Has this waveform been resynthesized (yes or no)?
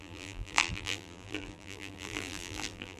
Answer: yes